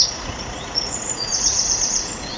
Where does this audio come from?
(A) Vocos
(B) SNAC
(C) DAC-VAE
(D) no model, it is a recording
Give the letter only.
A